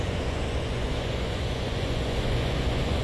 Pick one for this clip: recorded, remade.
remade